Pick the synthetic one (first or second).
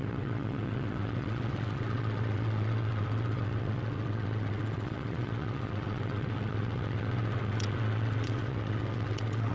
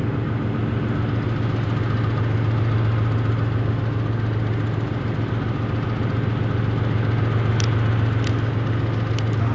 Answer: first